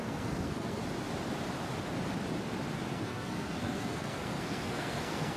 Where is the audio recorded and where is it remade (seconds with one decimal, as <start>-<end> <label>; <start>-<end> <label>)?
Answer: 0.0-0.8 remade; 0.8-2.9 recorded; 2.9-5.4 remade